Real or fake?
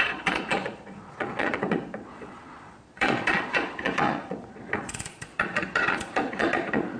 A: fake